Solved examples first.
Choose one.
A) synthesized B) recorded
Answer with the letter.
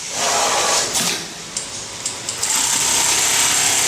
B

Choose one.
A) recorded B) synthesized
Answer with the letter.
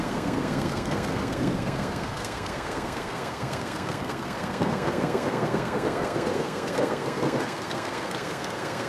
B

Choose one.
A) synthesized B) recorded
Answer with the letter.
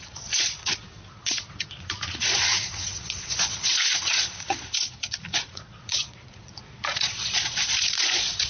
A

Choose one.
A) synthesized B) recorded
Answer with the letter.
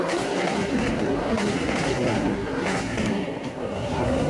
A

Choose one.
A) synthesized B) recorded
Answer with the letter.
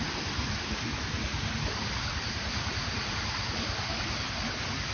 B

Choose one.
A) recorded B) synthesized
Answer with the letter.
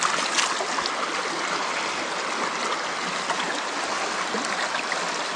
A